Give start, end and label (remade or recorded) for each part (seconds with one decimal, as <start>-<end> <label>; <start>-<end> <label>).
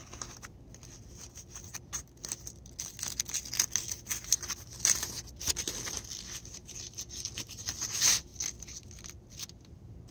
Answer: 0.0-10.1 recorded